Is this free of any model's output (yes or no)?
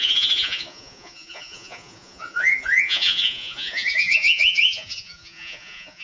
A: no